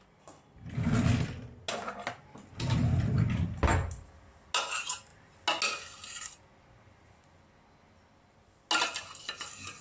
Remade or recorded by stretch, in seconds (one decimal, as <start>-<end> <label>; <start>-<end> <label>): 0.0-9.8 recorded

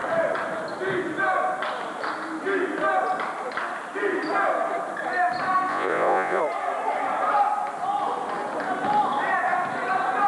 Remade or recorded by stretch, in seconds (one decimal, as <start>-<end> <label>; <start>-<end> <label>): 0.0-5.7 recorded; 5.7-6.4 remade; 6.4-10.3 recorded